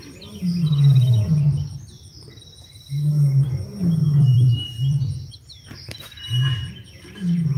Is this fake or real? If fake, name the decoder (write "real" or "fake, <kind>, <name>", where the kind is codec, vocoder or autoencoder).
fake, vocoder, BigVGAN v2